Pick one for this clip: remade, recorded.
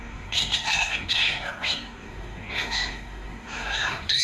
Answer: remade